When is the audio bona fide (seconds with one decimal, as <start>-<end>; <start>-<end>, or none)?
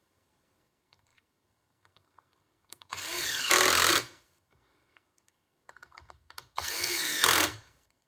none